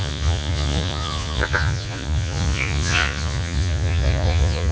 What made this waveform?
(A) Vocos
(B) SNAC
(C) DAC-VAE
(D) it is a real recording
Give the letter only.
A